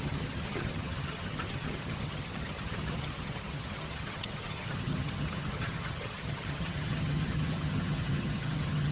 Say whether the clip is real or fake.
fake